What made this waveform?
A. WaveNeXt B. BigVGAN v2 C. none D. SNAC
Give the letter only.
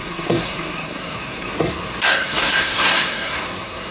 D